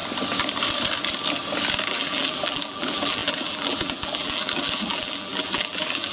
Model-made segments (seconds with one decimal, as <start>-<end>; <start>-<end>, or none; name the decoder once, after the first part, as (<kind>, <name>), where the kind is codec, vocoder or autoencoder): 1.9-6.1 (vocoder, BigVGAN v2)